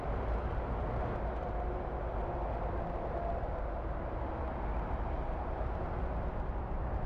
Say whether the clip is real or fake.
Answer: real